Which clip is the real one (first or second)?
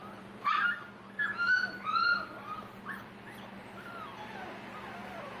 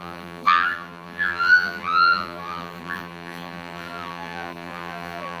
first